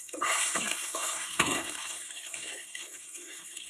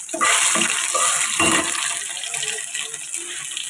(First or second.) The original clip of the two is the second